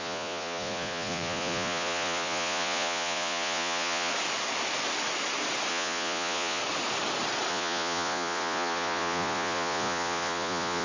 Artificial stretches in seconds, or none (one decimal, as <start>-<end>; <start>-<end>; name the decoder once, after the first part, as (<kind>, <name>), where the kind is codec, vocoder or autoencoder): 0.0-4.1 (vocoder, Vocos); 5.7-6.6; 7.5-10.8